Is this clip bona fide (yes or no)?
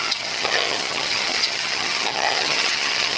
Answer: no